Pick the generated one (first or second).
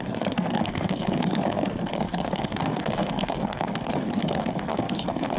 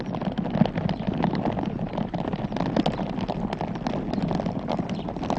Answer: first